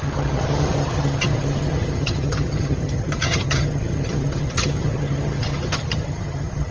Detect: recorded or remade remade